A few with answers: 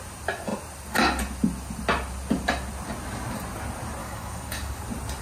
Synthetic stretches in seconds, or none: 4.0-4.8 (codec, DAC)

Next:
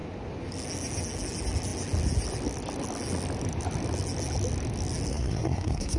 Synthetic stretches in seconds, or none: 5.1-6.0 (codec, SNAC)

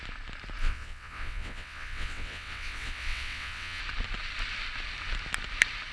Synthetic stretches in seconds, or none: 0.6-3.8 (vocoder, WaveNeXt)

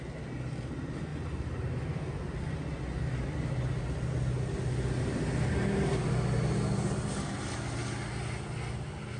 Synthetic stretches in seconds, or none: none

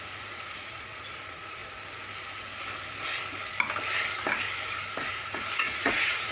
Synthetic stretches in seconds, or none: 0.0-1.6 (vocoder, Vocos); 5.1-6.3

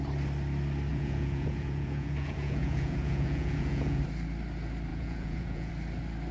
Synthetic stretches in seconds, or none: 0.9-4.0 (vocoder, Vocos); 4.9-5.7

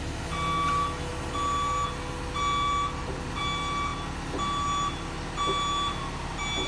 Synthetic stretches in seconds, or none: none

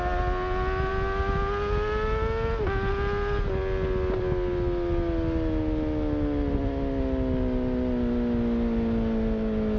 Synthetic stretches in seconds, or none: none